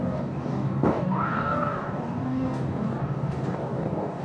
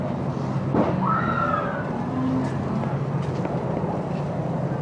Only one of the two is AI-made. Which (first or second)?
first